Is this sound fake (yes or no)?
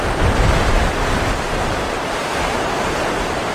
no